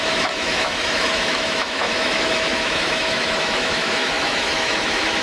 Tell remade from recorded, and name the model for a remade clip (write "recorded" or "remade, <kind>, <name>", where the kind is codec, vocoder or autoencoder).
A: remade, autoencoder, DAC-VAE